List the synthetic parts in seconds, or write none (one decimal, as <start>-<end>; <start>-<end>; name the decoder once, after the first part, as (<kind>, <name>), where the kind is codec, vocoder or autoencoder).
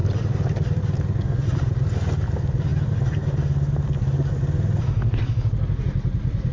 0.0-0.8 (vocoder, BigVGAN v2)